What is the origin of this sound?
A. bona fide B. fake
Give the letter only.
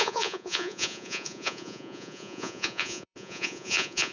B